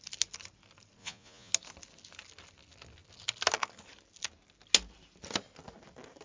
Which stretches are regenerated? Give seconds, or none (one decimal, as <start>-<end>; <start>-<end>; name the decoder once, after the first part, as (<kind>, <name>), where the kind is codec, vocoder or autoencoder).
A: 1.0-1.5 (vocoder, Vocos)